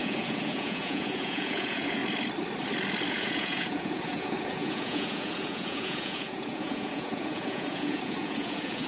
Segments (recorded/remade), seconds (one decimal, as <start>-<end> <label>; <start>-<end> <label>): 0.0-2.0 remade; 2.0-3.1 recorded; 3.1-8.9 remade